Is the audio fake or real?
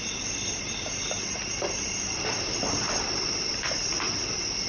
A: real